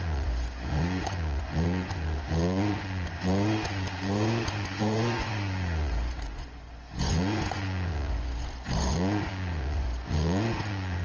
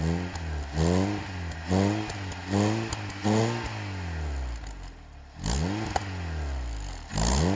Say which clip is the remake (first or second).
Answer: first